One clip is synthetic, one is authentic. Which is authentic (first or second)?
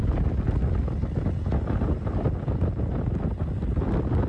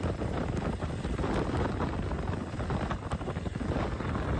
first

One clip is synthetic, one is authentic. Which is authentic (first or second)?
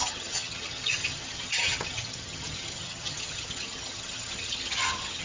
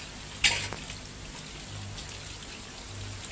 second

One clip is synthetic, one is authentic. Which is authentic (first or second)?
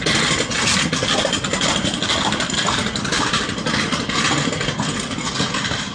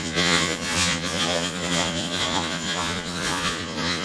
first